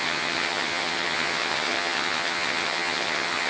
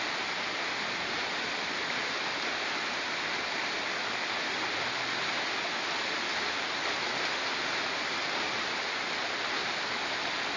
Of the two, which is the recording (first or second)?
second